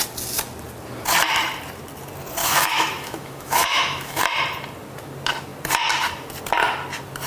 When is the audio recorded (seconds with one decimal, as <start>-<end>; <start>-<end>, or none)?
0.0-2.4; 4.2-7.3